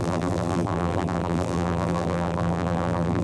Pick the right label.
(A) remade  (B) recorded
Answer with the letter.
A